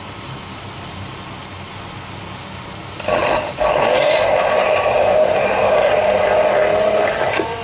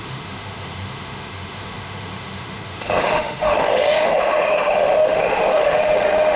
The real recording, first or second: first